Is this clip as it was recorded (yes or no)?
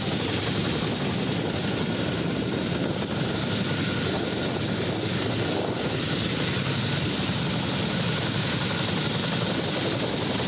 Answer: yes